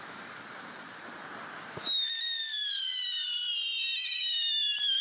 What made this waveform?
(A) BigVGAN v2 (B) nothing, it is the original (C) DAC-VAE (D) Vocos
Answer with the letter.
A